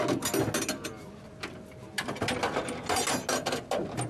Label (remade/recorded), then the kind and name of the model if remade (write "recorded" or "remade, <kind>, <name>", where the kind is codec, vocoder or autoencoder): recorded